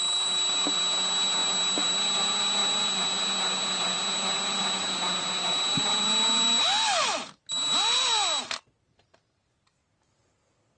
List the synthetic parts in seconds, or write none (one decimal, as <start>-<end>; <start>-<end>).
none